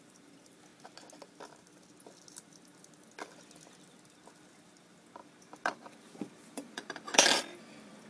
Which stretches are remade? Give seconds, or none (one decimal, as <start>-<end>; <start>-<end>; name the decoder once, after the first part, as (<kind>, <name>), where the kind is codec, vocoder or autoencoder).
5.2-7.6 (vocoder, BigVGAN v2)